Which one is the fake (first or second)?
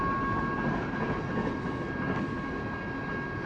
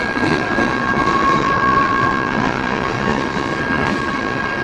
second